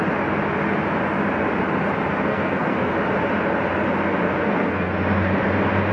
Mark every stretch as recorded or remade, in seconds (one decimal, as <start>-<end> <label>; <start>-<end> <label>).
0.0-2.3 recorded; 2.3-2.9 remade; 2.9-4.4 recorded; 4.4-4.9 remade; 4.9-5.9 recorded